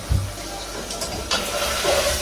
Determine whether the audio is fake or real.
real